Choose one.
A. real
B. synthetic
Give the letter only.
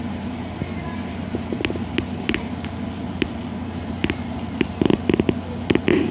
A